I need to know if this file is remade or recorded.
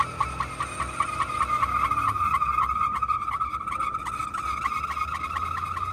recorded